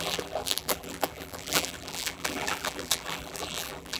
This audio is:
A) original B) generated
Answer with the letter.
B